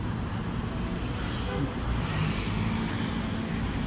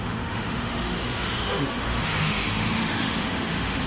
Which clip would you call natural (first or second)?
first